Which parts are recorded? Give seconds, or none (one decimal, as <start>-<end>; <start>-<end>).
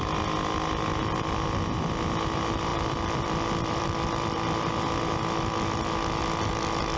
0.0-2.7; 4.7-7.0